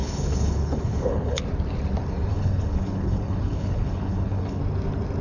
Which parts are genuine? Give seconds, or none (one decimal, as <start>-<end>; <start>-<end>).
1.4-2.3; 4.6-5.2